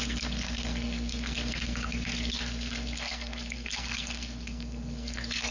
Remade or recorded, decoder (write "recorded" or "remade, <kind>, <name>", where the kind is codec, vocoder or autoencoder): remade, codec, SNAC